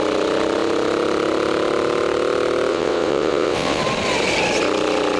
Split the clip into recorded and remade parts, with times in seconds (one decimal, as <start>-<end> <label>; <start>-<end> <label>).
0.0-2.7 recorded; 2.7-3.8 remade; 3.8-5.2 recorded